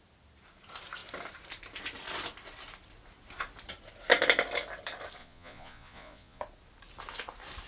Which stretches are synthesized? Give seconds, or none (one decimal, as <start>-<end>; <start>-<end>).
5.2-6.4